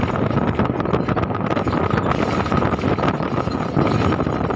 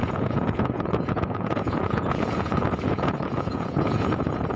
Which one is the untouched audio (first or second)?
first